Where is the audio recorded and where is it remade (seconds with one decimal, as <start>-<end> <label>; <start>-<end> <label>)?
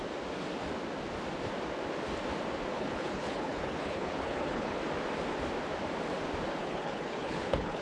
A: 0.0-2.7 recorded; 2.7-4.8 remade; 4.8-6.6 recorded; 6.6-7.8 remade